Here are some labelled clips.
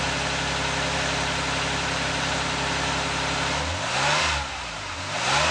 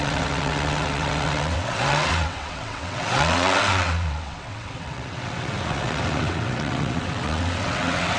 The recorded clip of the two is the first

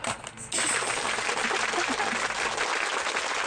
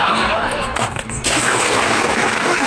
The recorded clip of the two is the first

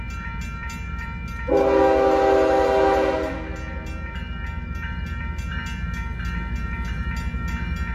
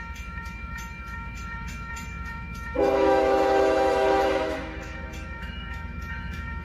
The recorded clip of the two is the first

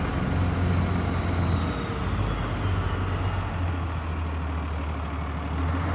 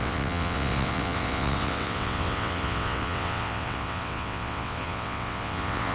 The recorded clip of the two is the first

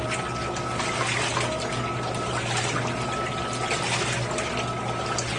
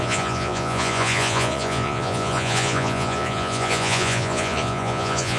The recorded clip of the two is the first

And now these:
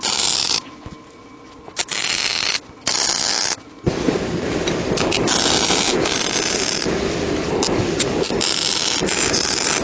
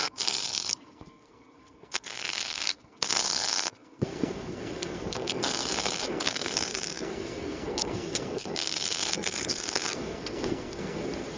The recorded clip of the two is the first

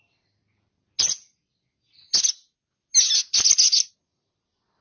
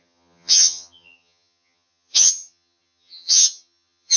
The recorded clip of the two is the first